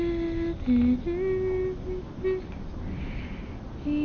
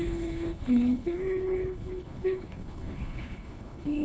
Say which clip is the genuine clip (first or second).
first